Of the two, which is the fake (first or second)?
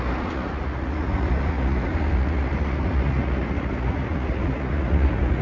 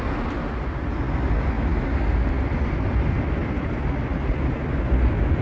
first